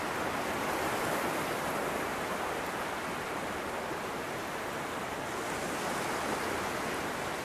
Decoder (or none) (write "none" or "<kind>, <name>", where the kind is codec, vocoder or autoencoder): none